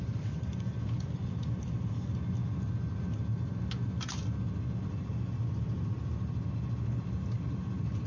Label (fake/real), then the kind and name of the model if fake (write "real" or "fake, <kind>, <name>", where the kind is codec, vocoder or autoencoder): real